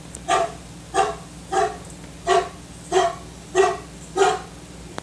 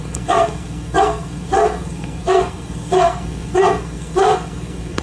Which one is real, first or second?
first